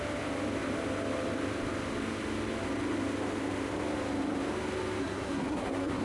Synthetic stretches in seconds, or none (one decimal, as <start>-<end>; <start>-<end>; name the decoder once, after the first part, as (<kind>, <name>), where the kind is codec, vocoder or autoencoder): 5.0-6.0 (codec, SNAC)